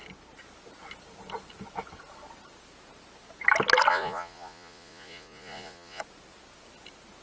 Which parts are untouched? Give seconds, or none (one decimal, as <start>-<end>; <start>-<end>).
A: 0.0-3.9; 6.0-7.2